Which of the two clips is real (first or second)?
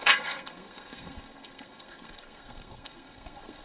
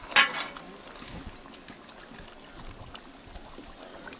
second